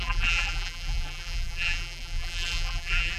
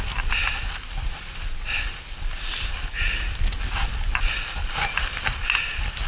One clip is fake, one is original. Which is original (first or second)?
second